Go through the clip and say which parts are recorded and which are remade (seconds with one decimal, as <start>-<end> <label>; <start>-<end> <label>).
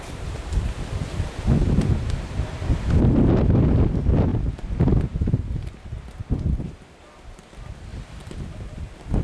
0.0-9.2 recorded